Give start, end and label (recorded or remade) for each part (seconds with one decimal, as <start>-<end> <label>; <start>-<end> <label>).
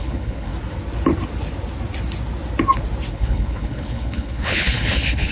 0.0-0.5 remade; 0.5-3.1 recorded; 3.1-5.3 remade